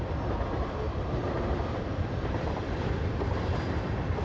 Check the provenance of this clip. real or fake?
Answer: fake